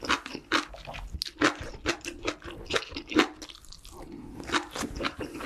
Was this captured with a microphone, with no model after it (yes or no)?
yes